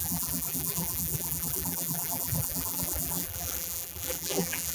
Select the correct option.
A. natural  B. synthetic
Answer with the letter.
B